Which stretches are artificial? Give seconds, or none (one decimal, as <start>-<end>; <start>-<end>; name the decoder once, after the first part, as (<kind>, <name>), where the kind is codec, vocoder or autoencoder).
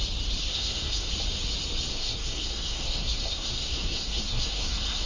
0.4-1.1 (codec, SNAC); 1.9-5.1